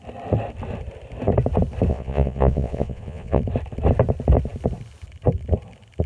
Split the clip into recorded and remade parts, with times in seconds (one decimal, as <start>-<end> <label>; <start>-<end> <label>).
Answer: 0.0-1.9 recorded; 1.9-3.4 remade; 3.4-6.1 recorded